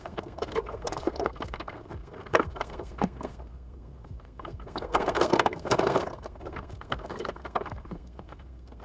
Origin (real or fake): fake